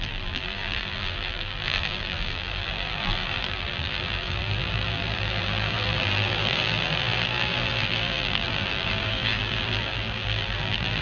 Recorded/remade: remade